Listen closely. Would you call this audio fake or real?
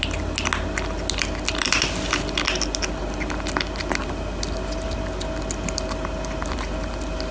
real